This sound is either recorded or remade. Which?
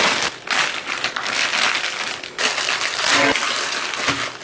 recorded